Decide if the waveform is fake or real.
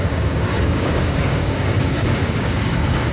fake